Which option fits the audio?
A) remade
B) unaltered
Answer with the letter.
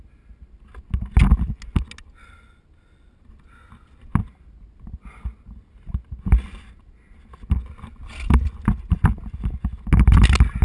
B